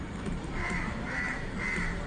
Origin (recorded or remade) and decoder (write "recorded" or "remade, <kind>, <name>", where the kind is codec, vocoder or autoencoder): recorded